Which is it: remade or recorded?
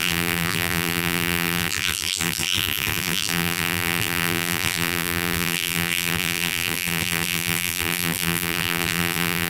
remade